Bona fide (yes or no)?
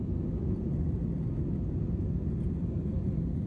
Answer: yes